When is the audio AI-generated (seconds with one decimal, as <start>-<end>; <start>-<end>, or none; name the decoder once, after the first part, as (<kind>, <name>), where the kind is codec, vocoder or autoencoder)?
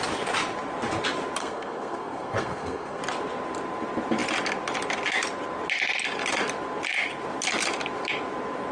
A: 1.4-3.0 (codec, SNAC)